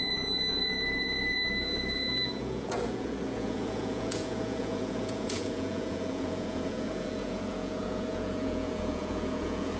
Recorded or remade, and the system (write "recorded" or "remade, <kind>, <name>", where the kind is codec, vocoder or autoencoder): remade, vocoder, Vocos